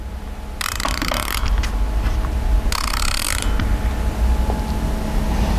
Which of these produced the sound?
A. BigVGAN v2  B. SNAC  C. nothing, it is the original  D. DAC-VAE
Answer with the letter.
C